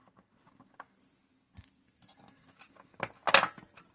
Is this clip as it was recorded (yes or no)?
yes